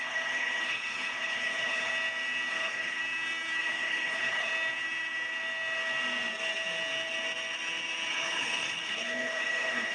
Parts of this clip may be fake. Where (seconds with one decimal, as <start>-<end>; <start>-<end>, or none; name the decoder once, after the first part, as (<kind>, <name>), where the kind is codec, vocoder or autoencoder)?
0.0-1.9 (codec, HILCodec); 2.5-3.0; 3.6-4.5; 8.1-9.9

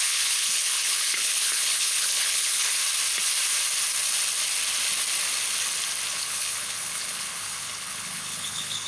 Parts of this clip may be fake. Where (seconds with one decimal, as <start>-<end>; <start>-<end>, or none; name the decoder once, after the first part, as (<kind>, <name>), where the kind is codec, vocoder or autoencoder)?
0.0-2.8 (codec, HILCodec); 6.1-8.9